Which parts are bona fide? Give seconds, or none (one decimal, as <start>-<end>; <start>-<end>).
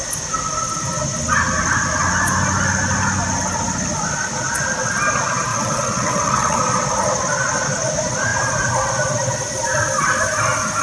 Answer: 0.0-5.5; 6.6-10.8